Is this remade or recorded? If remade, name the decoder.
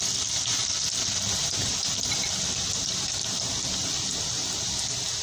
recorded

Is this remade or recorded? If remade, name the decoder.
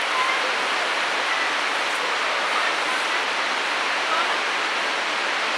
recorded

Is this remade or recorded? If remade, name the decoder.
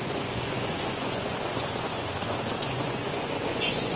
remade, vocoder, Vocos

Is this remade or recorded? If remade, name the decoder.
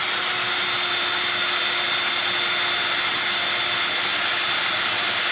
recorded